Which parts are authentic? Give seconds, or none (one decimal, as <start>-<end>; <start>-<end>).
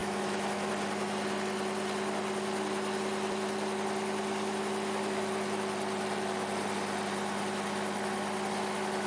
0.7-9.1